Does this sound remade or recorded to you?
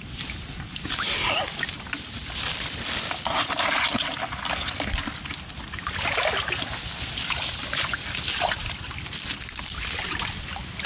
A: recorded